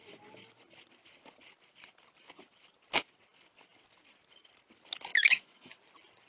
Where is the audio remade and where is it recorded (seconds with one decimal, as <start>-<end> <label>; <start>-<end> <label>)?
0.0-5.1 recorded; 5.1-5.7 remade; 5.7-6.3 recorded